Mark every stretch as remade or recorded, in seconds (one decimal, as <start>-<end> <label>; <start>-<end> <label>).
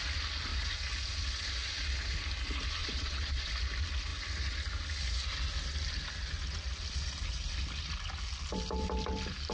0.0-2.8 recorded; 2.8-3.5 remade; 3.5-9.5 recorded